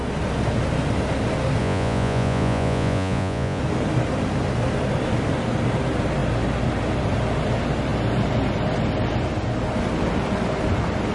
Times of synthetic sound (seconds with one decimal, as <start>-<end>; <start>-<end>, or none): 1.6-3.6